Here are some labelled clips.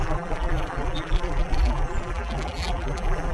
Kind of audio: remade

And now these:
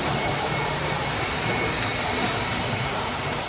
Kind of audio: remade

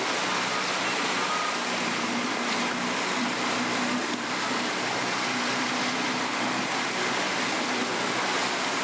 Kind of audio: recorded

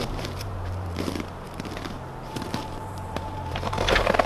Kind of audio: remade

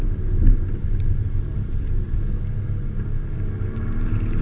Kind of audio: recorded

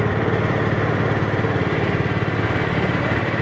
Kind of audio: remade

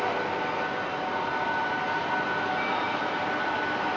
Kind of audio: recorded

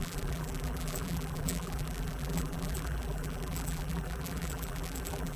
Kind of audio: remade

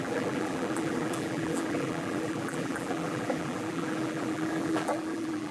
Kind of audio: remade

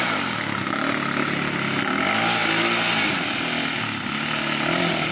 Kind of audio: recorded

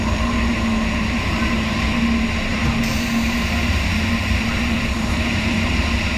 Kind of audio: remade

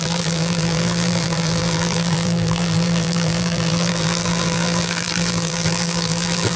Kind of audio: remade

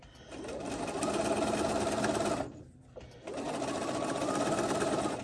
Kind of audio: recorded